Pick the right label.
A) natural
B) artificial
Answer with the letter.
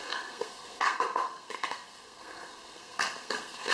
B